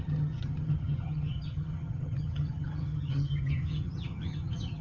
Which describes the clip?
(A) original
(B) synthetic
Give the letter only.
B